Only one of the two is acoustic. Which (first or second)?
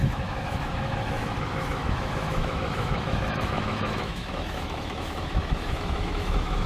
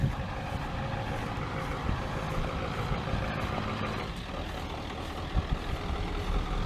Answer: second